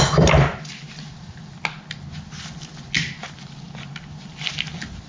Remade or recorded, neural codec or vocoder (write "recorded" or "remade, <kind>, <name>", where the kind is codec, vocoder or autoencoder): recorded